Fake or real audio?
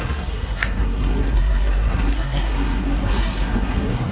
fake